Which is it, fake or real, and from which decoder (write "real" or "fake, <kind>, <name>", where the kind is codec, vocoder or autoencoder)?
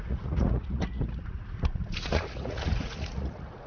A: fake, vocoder, Vocos